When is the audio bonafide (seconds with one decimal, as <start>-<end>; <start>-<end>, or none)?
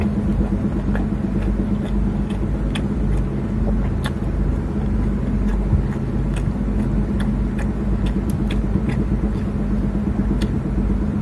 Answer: 0.0-11.2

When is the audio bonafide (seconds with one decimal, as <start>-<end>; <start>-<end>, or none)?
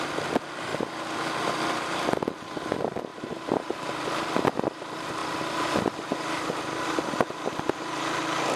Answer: 0.0-3.1; 3.7-8.6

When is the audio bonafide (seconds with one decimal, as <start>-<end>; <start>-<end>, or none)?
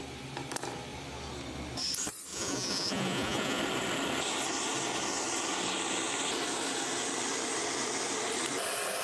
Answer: 0.0-2.3; 3.6-9.0